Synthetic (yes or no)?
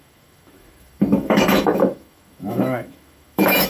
yes